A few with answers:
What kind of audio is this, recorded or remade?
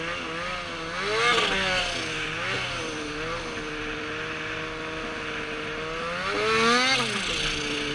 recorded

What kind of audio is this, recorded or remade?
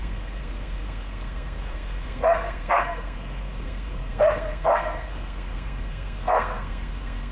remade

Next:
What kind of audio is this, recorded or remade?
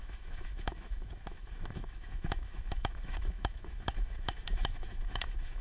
remade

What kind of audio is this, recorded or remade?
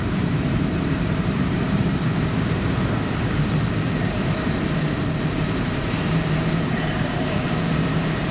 remade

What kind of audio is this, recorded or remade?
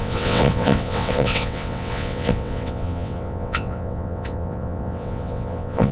remade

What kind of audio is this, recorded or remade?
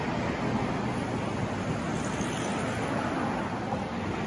recorded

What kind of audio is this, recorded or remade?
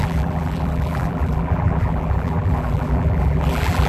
remade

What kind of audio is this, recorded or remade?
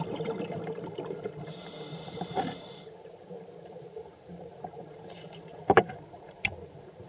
remade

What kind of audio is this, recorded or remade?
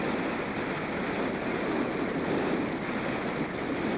recorded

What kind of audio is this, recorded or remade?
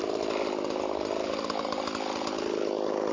recorded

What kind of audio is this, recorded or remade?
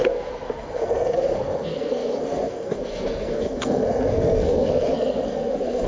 remade